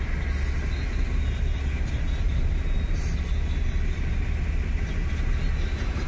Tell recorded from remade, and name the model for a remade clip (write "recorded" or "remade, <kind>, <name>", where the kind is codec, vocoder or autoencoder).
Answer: recorded